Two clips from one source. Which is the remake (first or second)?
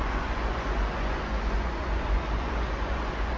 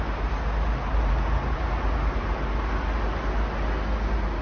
first